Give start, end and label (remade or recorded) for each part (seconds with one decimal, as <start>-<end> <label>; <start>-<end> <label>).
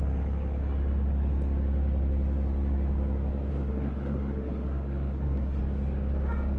0.0-3.5 recorded; 3.5-5.6 remade; 5.6-6.6 recorded